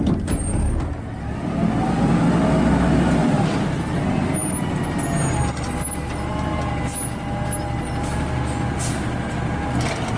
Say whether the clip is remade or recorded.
recorded